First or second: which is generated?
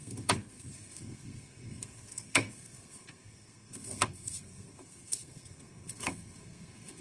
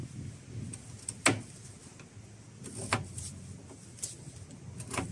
first